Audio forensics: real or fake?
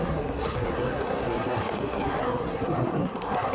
fake